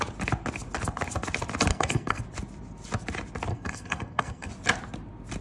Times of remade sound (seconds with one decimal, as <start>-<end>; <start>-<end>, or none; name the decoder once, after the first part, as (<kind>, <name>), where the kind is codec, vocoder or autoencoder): 1.7-2.2 (codec, SNAC); 3.5-4.5